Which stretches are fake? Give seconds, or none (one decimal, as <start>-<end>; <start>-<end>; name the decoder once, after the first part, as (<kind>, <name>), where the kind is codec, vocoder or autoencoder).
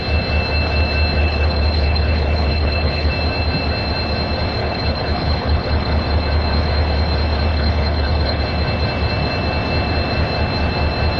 1.2-3.1 (codec, HILCodec); 4.6-6.0; 7.5-8.4